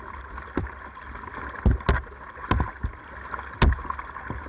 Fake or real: real